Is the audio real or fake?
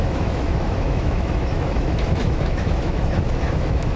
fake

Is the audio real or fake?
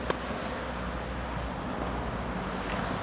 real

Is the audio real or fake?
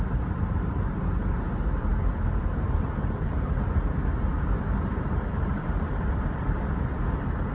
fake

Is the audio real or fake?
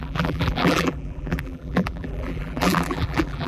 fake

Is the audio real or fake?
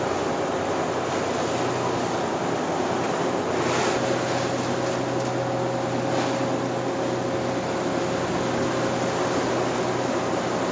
real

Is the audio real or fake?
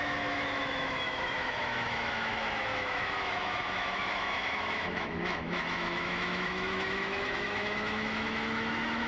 fake